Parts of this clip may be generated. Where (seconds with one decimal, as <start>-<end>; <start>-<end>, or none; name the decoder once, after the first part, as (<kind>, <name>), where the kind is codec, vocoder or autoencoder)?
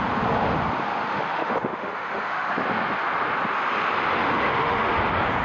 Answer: 0.9-2.5 (autoencoder, DAC-VAE); 4.5-5.0